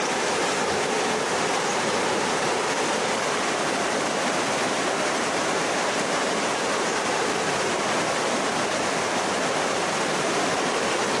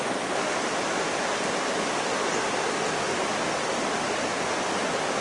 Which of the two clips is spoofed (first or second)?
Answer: first